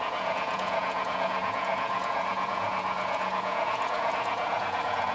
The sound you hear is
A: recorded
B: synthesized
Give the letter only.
B